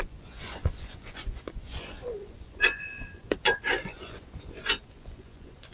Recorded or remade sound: remade